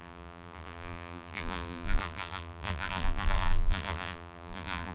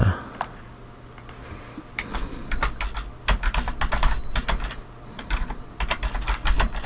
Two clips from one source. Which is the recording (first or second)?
second